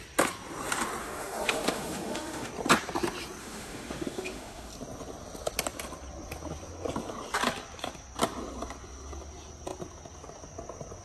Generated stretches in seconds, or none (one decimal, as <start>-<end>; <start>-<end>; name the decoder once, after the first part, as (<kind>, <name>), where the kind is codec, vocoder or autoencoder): 1.0-2.5 (autoencoder, DAC-VAE); 3.4-4.7